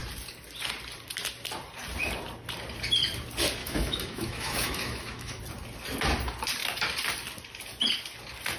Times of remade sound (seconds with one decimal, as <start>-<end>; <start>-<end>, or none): 3.6-5.4